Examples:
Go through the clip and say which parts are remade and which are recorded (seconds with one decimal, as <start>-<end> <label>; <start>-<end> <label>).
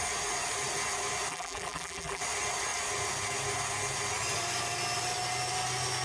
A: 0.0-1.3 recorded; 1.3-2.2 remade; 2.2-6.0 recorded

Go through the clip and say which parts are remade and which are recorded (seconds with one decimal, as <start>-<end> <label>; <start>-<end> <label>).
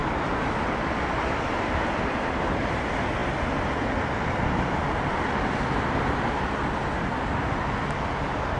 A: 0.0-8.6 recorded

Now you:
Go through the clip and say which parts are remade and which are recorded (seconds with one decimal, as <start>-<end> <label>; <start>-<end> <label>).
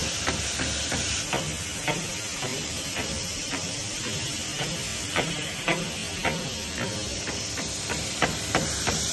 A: 0.0-2.5 recorded; 2.5-4.0 remade; 4.0-4.9 recorded; 4.9-5.5 remade; 5.5-9.1 recorded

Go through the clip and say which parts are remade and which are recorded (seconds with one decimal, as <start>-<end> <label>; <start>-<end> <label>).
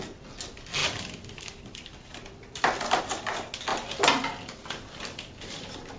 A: 0.0-0.8 recorded; 0.8-3.0 remade; 3.0-3.7 recorded; 3.7-6.0 remade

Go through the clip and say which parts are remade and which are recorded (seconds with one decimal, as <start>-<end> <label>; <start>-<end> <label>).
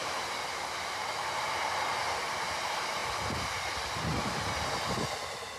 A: 0.0-5.6 recorded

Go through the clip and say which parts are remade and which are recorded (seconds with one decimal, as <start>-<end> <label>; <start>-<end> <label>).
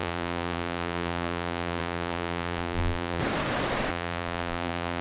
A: 0.0-3.2 remade; 3.2-3.9 recorded; 3.9-5.0 remade